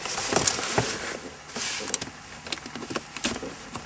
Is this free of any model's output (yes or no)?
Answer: yes